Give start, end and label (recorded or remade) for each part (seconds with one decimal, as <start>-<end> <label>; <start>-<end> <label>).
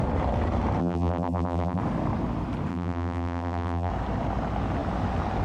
0.0-0.8 recorded; 0.8-1.8 remade; 1.8-2.7 recorded; 2.7-3.9 remade; 3.9-5.4 recorded